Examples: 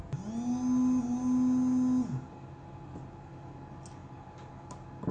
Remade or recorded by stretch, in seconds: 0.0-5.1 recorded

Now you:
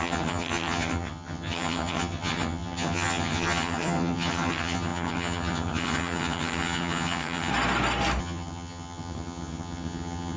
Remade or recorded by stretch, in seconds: 0.0-7.5 remade; 7.5-8.2 recorded; 8.2-10.4 remade

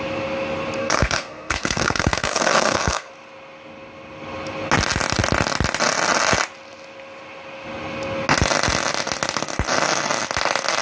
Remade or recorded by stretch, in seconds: 0.0-0.8 recorded; 0.8-3.1 remade; 3.1-10.8 recorded

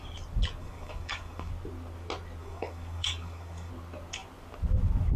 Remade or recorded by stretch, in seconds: 0.0-0.6 recorded; 0.6-1.5 remade; 1.5-2.4 recorded; 2.4-3.7 remade; 3.7-5.2 recorded

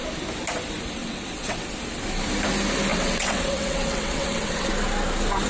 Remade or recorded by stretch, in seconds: 0.0-1.0 recorded; 1.0-1.7 remade; 1.7-2.9 recorded; 2.9-4.7 remade; 4.7-5.5 recorded